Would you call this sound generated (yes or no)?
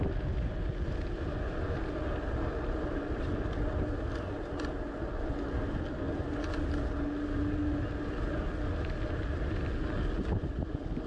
no